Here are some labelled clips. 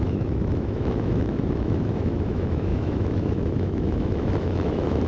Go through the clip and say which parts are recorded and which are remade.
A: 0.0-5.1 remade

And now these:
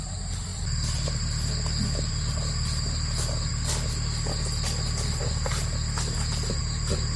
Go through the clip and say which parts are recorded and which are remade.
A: 0.0-7.2 recorded

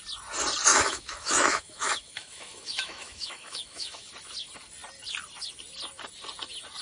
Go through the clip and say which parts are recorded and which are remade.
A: 0.0-0.7 recorded; 0.7-4.1 remade; 4.1-6.8 recorded

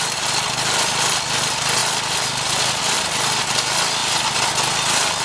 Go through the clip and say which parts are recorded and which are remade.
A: 0.0-5.2 recorded